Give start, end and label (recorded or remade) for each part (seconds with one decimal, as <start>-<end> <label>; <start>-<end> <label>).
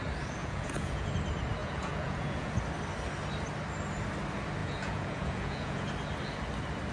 0.0-0.4 recorded; 0.4-1.1 remade; 1.1-1.6 recorded; 1.6-2.5 remade; 2.5-4.6 recorded; 4.6-5.8 remade; 5.8-6.9 recorded